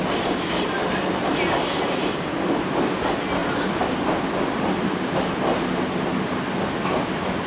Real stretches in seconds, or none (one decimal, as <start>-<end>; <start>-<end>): 0.0-3.4; 3.9-7.5